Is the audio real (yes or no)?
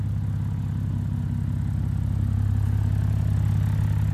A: yes